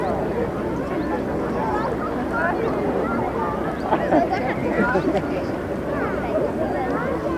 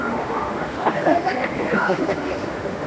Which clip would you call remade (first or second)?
second